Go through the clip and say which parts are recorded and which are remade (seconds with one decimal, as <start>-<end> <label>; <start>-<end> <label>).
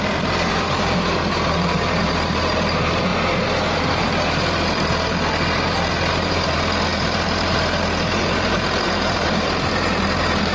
0.0-3.1 remade; 3.1-3.8 recorded; 3.8-10.5 remade